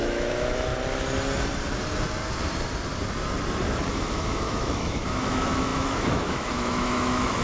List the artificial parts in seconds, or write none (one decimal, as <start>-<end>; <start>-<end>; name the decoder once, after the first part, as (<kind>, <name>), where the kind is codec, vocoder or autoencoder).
0.0-0.7 (autoencoder, DAC-VAE); 3.9-7.4